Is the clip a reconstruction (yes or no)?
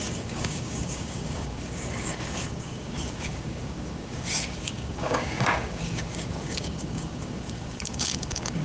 yes